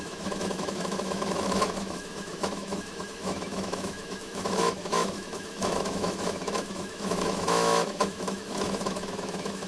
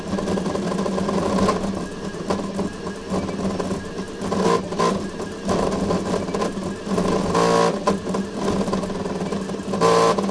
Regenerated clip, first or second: first